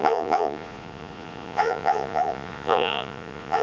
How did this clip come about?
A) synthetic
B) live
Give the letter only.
A